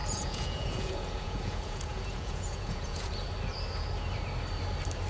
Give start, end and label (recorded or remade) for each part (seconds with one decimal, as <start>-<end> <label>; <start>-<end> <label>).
0.0-3.1 remade; 3.1-5.1 recorded